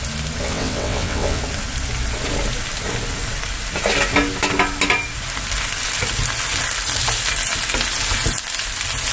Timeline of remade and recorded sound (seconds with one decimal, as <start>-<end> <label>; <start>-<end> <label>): 0.0-0.4 recorded; 0.4-1.4 remade; 1.4-9.1 recorded